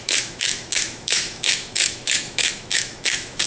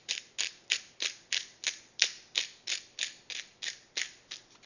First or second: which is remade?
first